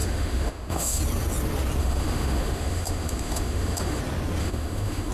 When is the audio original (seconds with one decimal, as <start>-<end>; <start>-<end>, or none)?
1.0-1.8; 4.0-4.4